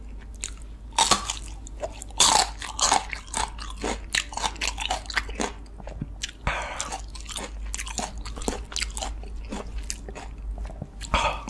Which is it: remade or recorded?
recorded